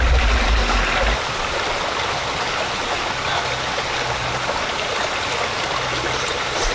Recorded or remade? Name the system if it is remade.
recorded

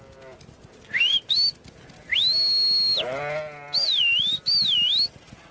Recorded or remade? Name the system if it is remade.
recorded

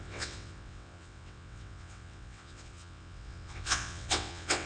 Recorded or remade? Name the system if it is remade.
remade, vocoder, WaveNeXt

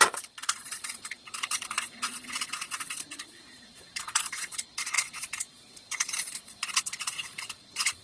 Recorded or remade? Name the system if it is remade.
remade, vocoder, Vocos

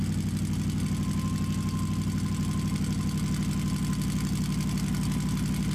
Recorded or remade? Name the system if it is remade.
recorded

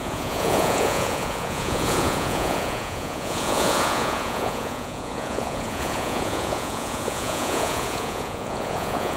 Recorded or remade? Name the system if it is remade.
remade, vocoder, Vocos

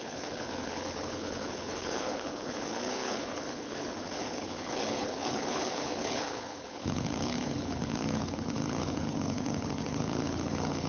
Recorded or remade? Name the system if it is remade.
remade, codec, HILCodec